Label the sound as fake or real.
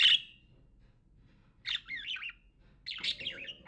real